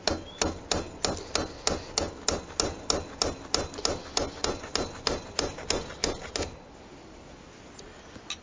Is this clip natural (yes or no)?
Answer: yes